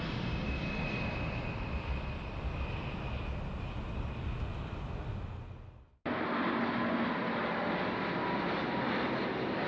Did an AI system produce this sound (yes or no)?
no